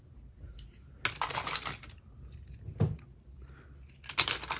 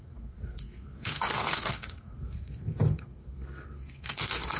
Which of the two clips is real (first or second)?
first